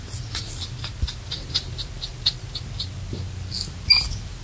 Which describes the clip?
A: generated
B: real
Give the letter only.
B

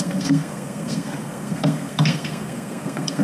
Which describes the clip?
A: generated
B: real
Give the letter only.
A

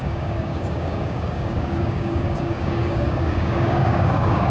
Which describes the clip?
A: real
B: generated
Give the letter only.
B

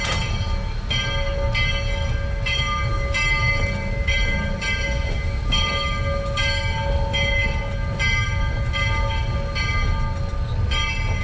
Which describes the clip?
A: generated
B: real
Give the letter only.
B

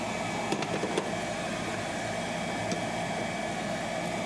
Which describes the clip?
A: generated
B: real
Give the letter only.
B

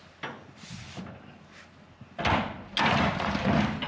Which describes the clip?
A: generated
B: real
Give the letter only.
B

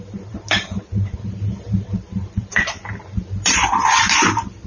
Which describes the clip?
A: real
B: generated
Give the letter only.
B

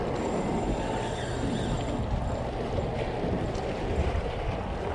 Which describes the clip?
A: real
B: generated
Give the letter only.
A